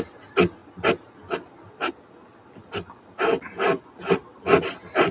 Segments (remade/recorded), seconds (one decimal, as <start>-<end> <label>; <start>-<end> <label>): 0.0-0.6 recorded; 0.6-1.9 remade; 1.9-5.1 recorded